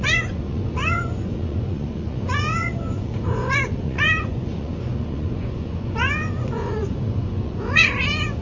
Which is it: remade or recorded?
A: remade